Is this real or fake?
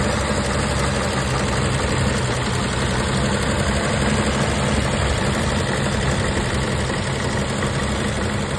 real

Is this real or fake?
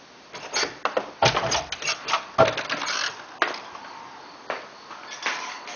real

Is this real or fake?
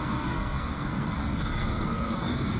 fake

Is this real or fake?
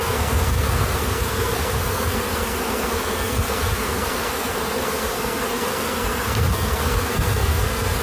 fake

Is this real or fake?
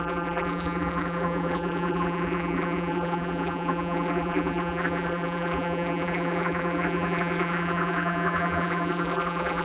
fake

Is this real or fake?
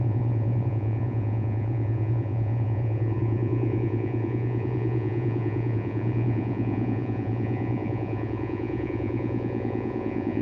fake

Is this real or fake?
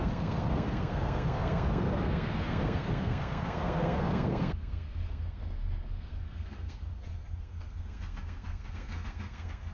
fake